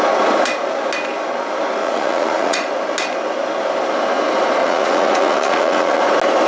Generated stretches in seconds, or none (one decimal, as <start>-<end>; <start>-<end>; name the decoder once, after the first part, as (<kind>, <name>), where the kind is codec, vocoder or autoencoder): 1.8-2.7 (vocoder, Vocos); 4.6-6.0